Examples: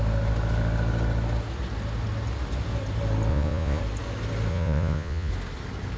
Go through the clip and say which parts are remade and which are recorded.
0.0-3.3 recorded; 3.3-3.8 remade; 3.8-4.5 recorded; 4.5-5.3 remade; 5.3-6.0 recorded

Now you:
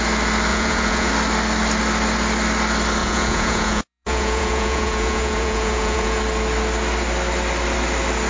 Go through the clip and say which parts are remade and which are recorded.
0.0-0.5 recorded; 0.5-1.1 remade; 1.1-3.0 recorded; 3.0-6.2 remade; 6.2-8.3 recorded

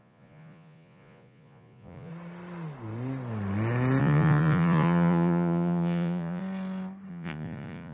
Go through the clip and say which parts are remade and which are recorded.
0.0-2.1 remade; 2.1-4.0 recorded; 4.0-6.4 remade; 6.4-7.1 recorded; 7.1-7.9 remade